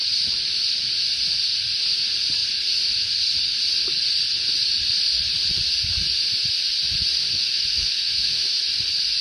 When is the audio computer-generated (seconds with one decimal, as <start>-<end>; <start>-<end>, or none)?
7.2-8.6